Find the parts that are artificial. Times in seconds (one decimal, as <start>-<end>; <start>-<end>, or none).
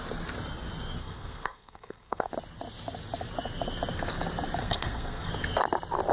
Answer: 1.0-2.3; 4.6-5.3